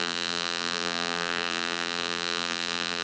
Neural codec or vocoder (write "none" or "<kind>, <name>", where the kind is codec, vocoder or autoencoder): vocoder, BigVGAN v2